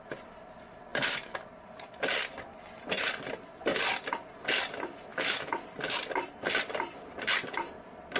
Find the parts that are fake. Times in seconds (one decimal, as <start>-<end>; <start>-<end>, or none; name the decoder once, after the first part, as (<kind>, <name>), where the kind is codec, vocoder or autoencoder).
5.1-5.6 (autoencoder, DAC-VAE)